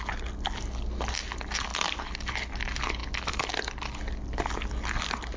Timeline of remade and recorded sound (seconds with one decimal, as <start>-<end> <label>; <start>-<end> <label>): 0.0-5.4 recorded